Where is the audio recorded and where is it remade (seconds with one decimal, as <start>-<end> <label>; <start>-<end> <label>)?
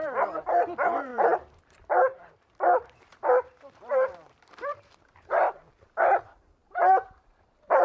0.0-7.8 remade